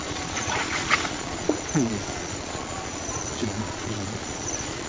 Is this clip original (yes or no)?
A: no